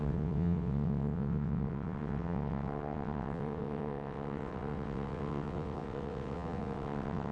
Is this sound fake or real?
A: fake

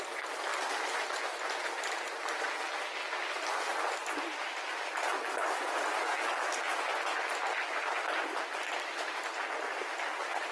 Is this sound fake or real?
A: real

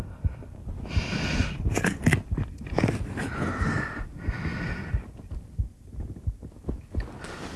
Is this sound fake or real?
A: real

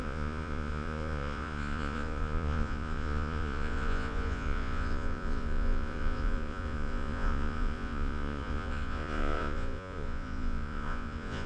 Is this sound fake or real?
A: fake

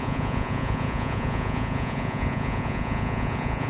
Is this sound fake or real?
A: fake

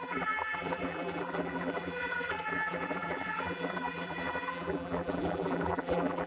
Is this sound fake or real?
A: fake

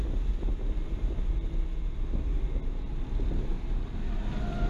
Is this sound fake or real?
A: real